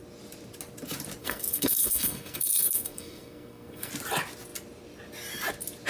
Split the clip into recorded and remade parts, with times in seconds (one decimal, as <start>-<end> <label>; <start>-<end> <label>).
0.0-1.2 recorded; 1.2-3.9 remade; 3.9-5.9 recorded